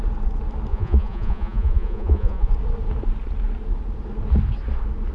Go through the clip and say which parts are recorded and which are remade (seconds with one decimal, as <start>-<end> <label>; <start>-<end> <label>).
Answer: 0.0-0.7 recorded; 0.7-2.5 remade; 2.5-5.1 recorded